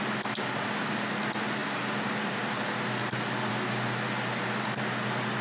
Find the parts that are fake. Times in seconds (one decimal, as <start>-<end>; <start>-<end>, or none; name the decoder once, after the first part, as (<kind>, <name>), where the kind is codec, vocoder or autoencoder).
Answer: none